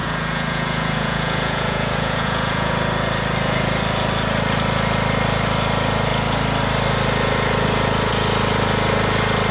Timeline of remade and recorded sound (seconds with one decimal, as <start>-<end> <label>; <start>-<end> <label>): 0.0-2.7 remade; 2.7-9.5 recorded